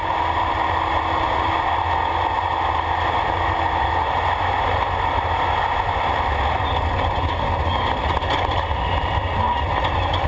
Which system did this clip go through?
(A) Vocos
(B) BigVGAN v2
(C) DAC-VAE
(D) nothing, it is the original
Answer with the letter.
D